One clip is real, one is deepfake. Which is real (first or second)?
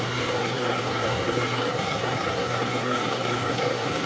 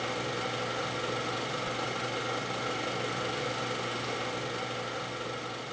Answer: second